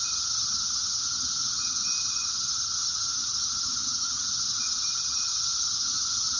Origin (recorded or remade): remade